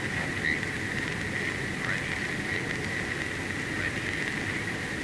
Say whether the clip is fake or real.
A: real